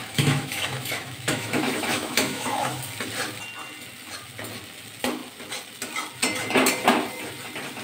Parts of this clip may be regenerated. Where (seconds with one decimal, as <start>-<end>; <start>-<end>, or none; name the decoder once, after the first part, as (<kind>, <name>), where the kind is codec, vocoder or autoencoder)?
0.0-2.8 (autoencoder, DAC-VAE)

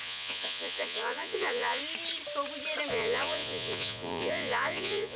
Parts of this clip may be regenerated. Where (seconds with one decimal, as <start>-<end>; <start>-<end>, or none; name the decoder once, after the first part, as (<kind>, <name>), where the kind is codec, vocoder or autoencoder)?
0.0-1.8 (vocoder, Vocos); 2.9-5.2

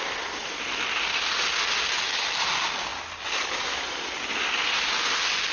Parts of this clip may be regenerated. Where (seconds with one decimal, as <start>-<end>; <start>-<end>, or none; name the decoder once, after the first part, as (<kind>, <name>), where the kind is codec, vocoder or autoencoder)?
none

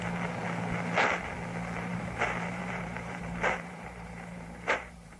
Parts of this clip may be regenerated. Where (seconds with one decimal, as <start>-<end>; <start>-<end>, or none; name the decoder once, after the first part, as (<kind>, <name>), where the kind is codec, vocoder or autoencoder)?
1.9-5.2 (vocoder, BigVGAN v2)

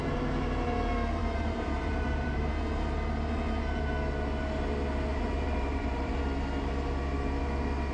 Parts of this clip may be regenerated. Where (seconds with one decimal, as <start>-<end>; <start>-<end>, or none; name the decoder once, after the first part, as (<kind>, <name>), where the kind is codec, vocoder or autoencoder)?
1.2-2.5 (vocoder, BigVGAN v2); 5.1-6.2

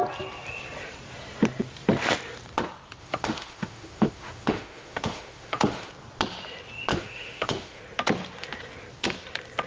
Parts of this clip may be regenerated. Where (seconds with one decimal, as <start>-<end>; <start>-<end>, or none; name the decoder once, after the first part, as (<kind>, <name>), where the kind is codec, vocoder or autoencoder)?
3.0-5.9 (autoencoder, DAC-VAE); 6.9-7.8